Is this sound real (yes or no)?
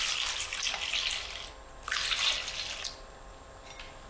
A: yes